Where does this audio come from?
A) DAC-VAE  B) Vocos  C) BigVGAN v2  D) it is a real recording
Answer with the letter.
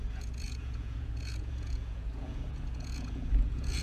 B